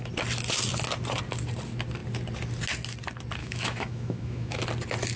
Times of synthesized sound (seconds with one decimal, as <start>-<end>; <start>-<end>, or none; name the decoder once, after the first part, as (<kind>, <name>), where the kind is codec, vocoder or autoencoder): 3.4-4.6 (autoencoder, DAC-VAE)

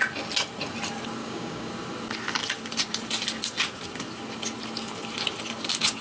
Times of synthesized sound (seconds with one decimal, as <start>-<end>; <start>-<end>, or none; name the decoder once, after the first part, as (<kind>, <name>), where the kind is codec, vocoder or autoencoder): 1.2-1.7 (codec, DAC)

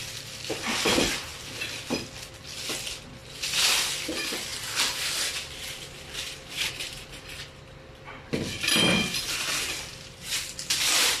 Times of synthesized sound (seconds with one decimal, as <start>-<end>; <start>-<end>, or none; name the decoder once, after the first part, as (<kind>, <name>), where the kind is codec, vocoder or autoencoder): 0.0-1.3 (vocoder, BigVGAN v2); 2.3-3.2; 3.9-11.2